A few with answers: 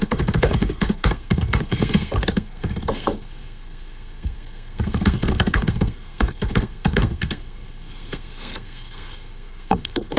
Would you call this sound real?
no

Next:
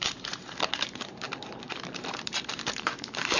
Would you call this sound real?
no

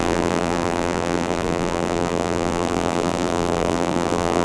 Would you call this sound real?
no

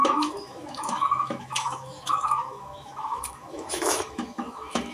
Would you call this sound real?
no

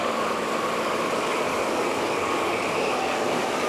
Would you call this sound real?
no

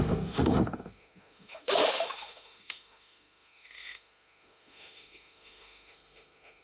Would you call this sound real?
no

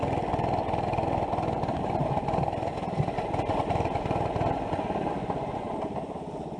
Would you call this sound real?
yes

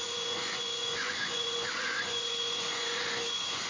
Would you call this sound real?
no